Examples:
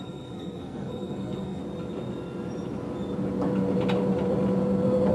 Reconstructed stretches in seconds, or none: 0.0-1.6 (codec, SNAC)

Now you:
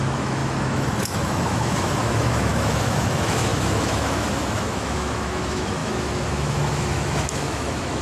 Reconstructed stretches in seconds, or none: 0.0-8.0 (autoencoder, DAC-VAE)

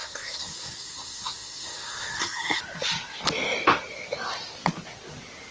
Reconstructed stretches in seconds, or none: 0.0-2.6 (codec, SNAC)

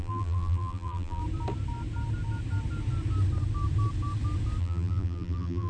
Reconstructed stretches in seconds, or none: 0.0-1.2 (vocoder, BigVGAN v2); 4.6-5.7

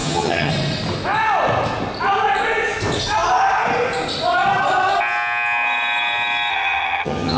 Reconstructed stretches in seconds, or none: 0.0-0.5 (vocoder, HiFi-GAN); 6.5-7.4

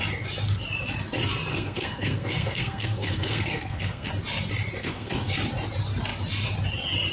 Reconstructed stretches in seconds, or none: 1.5-4.1 (codec, SNAC); 4.8-5.3

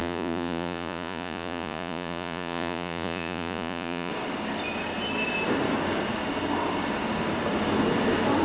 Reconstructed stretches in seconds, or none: 0.0-4.1 (vocoder, Vocos)